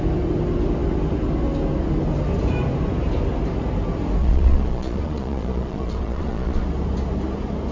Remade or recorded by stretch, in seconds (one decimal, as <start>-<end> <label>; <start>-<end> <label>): 0.0-4.2 recorded; 4.2-6.6 remade; 6.6-7.7 recorded